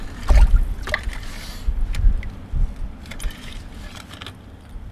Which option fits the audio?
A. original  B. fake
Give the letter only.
A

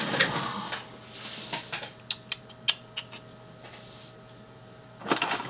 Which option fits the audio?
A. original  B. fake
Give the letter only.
A